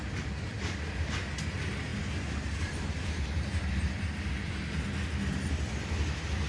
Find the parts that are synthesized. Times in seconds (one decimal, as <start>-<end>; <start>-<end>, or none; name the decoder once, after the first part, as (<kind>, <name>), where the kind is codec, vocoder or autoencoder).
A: none